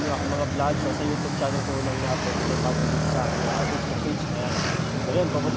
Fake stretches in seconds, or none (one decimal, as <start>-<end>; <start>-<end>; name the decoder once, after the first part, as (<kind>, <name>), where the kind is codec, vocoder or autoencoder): 1.2-2.0 (autoencoder, DAC-VAE)